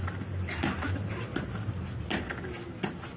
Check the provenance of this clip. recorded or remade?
recorded